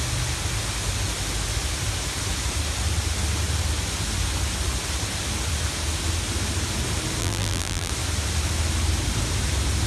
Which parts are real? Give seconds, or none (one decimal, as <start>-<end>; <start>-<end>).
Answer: 0.0-7.2; 7.9-9.9